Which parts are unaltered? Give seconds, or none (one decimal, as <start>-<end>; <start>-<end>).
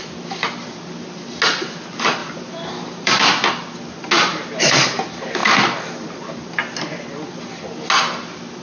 0.0-2.2; 3.1-8.6